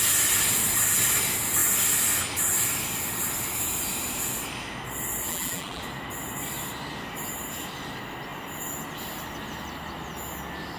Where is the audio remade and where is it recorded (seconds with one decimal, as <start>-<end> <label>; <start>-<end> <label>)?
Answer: 0.0-5.3 recorded; 5.3-5.8 remade; 5.8-10.8 recorded